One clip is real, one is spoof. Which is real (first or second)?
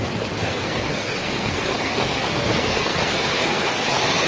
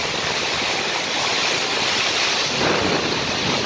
second